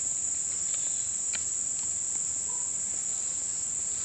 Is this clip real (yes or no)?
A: yes